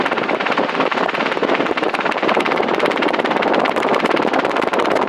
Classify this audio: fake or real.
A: fake